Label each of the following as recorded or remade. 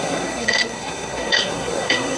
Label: remade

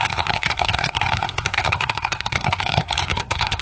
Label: remade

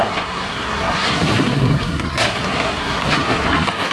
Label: remade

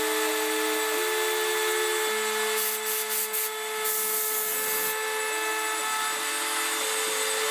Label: recorded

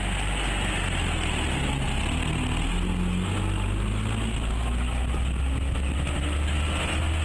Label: recorded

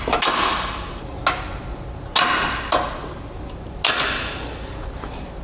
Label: recorded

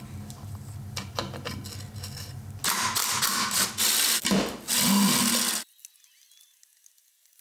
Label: recorded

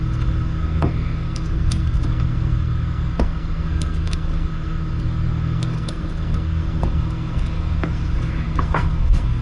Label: remade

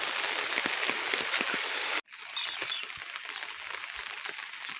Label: recorded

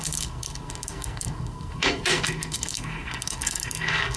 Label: remade